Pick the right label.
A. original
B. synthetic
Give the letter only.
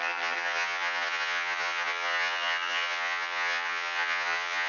B